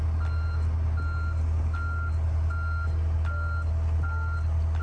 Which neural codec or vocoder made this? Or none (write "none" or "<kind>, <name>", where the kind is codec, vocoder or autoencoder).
none